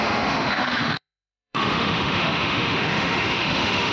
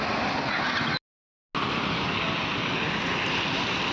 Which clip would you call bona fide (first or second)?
second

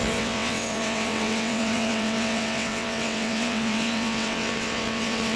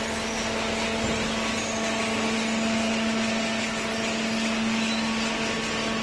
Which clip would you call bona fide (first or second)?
second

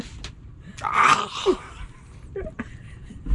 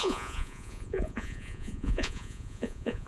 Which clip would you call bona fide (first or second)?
first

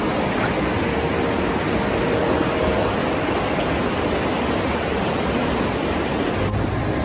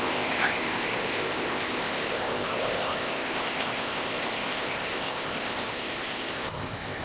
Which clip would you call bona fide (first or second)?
first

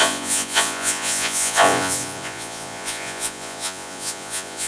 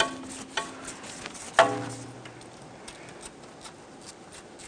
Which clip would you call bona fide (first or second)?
second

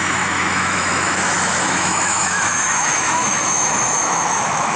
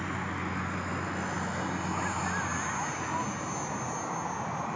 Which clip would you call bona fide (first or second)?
second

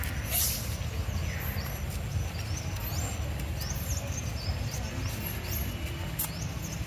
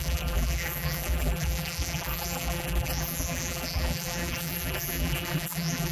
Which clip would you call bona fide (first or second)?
first